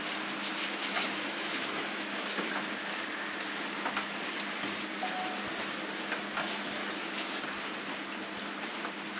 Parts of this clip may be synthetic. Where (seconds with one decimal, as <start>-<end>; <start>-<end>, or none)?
0.8-2.6; 6.8-7.3